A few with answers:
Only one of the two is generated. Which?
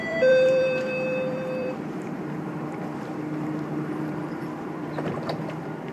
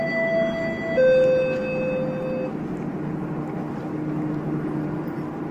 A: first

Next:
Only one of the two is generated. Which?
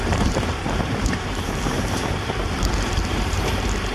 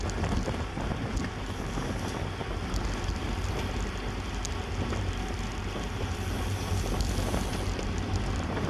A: first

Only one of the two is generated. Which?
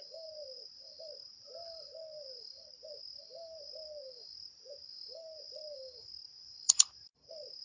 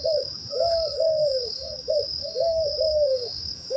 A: second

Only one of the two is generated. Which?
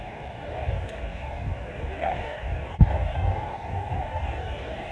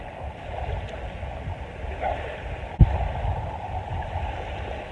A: first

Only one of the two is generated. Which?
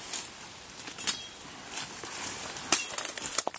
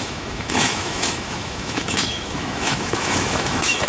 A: second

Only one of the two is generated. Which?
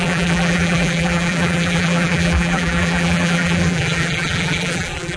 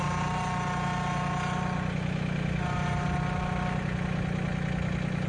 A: first